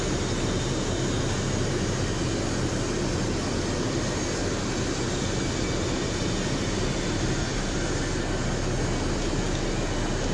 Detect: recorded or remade recorded